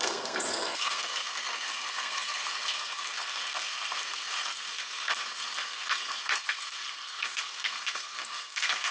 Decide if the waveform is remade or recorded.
remade